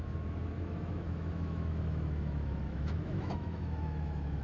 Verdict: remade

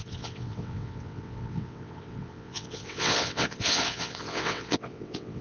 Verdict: remade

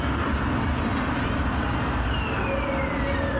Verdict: recorded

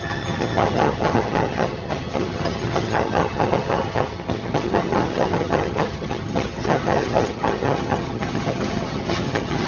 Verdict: remade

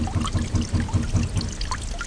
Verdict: recorded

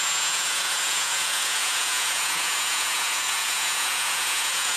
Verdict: remade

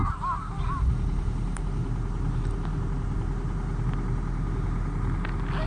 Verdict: recorded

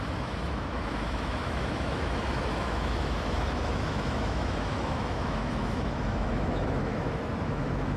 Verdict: remade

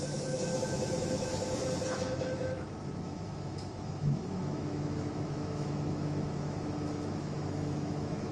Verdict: remade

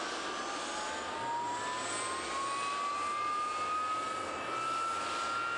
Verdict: recorded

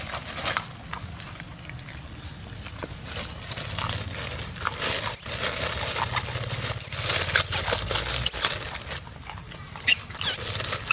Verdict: recorded